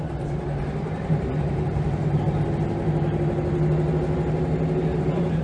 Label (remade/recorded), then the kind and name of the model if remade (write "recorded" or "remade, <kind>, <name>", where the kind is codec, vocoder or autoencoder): recorded